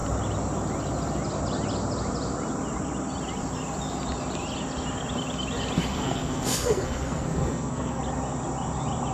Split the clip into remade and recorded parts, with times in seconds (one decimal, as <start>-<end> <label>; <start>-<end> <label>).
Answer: 0.0-5.9 recorded; 5.9-8.0 remade; 8.0-9.1 recorded